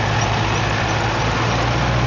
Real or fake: real